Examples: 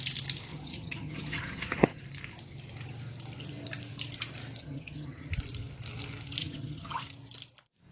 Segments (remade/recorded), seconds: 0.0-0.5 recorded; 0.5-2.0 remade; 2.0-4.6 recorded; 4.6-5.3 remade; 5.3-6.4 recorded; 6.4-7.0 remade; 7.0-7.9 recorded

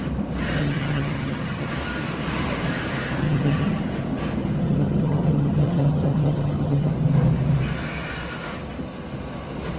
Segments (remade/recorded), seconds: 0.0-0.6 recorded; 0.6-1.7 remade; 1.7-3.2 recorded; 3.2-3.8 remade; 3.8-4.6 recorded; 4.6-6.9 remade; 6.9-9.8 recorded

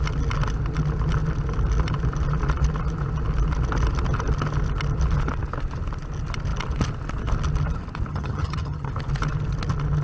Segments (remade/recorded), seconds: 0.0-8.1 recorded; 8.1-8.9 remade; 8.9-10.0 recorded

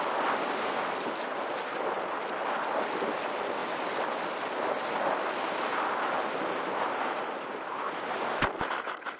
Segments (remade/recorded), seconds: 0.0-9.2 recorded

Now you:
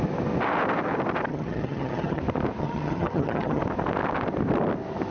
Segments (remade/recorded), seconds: 0.0-1.3 recorded; 1.3-2.2 remade; 2.2-2.6 recorded; 2.6-3.6 remade; 3.6-5.1 recorded

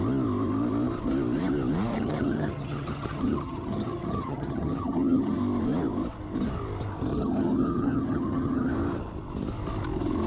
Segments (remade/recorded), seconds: 0.0-1.9 recorded; 1.9-5.4 remade; 5.4-7.1 recorded; 7.1-8.7 remade; 8.7-10.3 recorded